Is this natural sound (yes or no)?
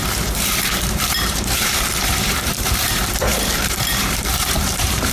no